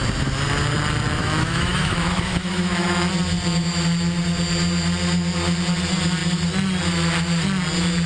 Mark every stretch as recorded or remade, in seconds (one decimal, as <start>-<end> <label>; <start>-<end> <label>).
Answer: 0.0-1.2 recorded; 1.2-3.1 remade; 3.1-8.1 recorded